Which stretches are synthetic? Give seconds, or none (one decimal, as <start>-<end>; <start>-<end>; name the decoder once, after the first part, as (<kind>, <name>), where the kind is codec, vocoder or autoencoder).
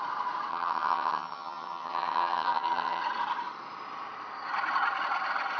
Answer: 0.5-3.0 (vocoder, HiFi-GAN)